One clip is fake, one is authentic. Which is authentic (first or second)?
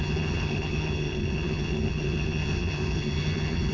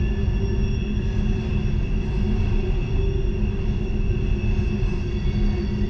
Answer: second